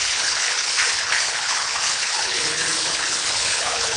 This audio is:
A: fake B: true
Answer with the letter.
A